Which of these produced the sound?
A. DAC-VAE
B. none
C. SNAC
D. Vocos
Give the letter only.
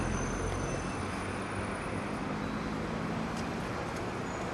B